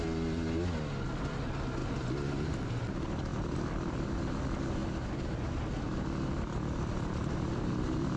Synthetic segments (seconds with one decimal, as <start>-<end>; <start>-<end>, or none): none